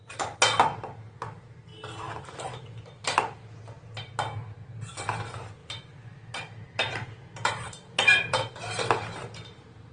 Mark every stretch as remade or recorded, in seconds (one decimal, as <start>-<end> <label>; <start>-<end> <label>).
0.0-1.7 recorded; 1.7-4.1 remade; 4.1-5.6 recorded; 5.6-9.9 remade